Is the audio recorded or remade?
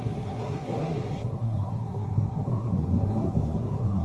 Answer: remade